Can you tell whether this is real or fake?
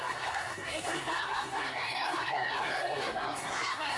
fake